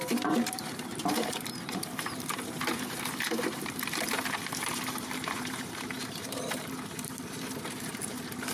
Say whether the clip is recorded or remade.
remade